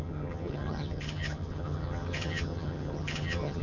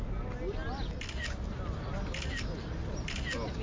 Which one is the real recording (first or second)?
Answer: second